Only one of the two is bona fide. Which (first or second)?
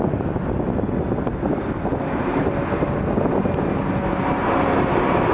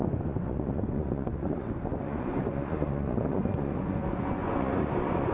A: first